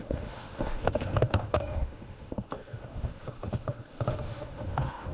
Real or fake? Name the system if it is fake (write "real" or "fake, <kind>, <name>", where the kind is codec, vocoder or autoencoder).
fake, autoencoder, DAC-VAE